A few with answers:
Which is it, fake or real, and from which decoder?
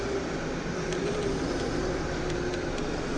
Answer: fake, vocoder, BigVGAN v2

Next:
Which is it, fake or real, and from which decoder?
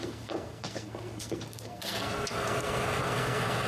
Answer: fake, codec, SNAC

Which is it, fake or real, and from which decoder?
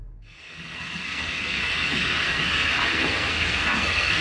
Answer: fake, codec, SNAC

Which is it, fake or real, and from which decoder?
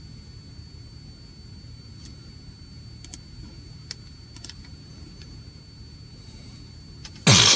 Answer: real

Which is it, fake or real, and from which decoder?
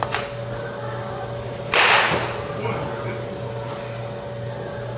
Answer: real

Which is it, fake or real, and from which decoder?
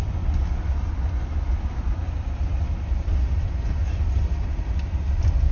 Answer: real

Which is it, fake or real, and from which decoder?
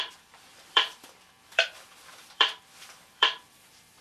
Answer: fake, vocoder, BigVGAN v2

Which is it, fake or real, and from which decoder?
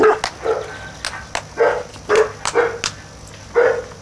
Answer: real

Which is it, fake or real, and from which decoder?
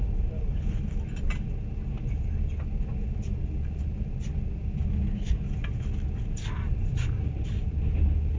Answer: real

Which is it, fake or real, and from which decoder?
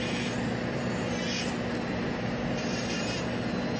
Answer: real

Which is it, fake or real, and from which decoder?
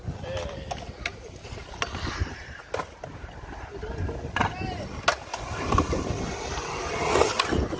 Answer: real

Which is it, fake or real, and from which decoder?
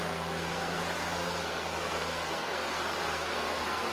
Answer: fake, codec, SNAC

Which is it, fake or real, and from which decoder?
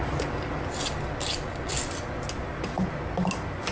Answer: real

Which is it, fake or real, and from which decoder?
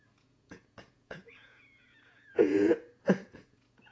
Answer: fake, vocoder, Vocos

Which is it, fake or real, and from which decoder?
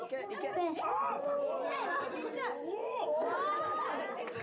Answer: real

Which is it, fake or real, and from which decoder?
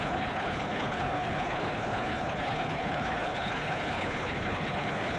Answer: fake, codec, HILCodec